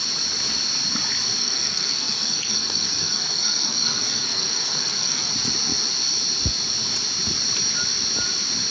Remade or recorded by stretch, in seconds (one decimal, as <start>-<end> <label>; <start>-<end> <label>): 0.0-1.4 recorded; 1.4-5.3 remade; 5.3-8.7 recorded